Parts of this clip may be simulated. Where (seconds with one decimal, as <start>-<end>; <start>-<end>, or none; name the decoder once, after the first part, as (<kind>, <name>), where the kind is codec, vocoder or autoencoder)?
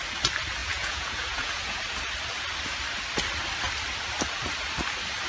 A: 0.6-1.8 (vocoder, Vocos)